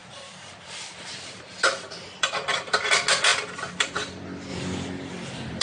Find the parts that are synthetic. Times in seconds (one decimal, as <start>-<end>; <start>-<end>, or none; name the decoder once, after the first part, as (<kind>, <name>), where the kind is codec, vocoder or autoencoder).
0.0-2.9 (vocoder, BigVGAN v2); 4.5-5.6